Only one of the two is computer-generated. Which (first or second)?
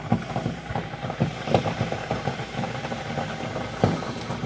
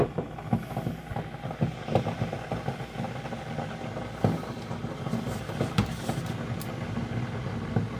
first